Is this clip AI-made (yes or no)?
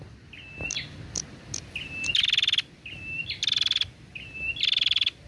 no